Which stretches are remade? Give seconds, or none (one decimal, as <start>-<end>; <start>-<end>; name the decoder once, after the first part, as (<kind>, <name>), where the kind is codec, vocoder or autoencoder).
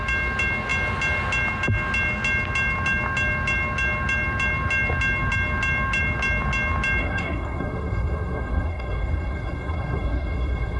7.0-10.8 (codec, SNAC)